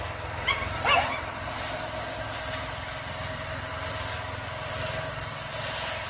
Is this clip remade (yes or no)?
no